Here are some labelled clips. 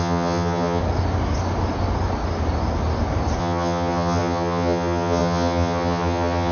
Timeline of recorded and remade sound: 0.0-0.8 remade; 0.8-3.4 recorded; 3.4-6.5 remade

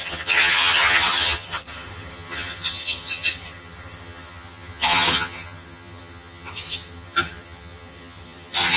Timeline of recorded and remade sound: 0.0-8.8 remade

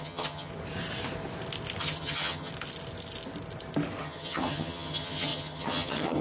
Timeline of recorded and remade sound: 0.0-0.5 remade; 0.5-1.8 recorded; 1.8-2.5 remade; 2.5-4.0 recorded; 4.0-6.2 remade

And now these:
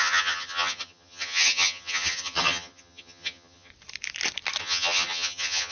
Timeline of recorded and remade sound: 0.0-3.7 remade; 3.7-4.6 recorded; 4.6-5.7 remade

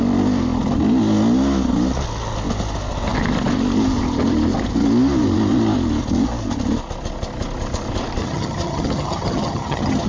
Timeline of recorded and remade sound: 0.0-8.2 recorded; 8.2-10.1 remade